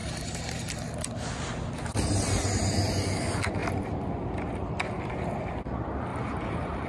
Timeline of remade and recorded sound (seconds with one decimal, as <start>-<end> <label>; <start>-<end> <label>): 0.0-0.8 remade; 0.8-6.1 recorded; 6.1-6.9 remade